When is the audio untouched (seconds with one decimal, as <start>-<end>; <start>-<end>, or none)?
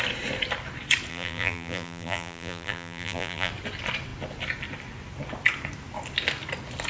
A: 0.0-1.1; 3.5-6.9